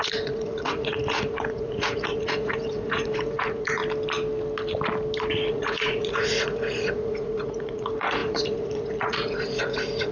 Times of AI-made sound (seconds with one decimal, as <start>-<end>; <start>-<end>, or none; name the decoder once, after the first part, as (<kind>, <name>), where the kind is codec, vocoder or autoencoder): 0.0-3.8 (vocoder, Vocos); 5.5-10.1